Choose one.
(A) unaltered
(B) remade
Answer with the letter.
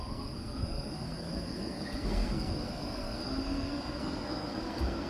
B